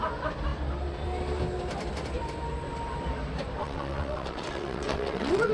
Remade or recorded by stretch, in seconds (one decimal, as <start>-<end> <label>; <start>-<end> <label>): 0.0-3.6 recorded; 3.6-5.5 remade